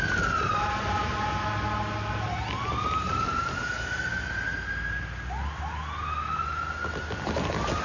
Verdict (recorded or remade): recorded